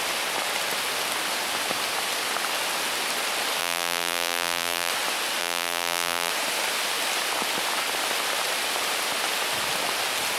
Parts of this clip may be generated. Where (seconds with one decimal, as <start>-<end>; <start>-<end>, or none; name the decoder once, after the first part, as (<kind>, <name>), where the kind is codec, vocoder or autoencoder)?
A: 3.6-4.9 (vocoder, BigVGAN v2); 5.4-6.3